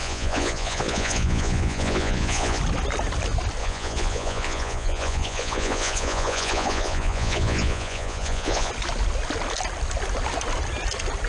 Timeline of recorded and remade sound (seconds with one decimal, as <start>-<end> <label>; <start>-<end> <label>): 0.0-2.6 remade; 2.6-3.6 recorded; 3.6-8.7 remade; 8.7-11.3 recorded